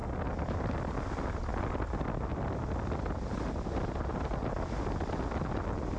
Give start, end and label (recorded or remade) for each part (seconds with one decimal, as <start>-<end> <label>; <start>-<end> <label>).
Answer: 0.0-6.0 recorded